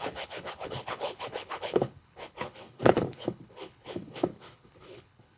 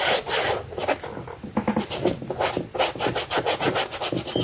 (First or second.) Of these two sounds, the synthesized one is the first